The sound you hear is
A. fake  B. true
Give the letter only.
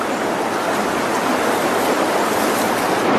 B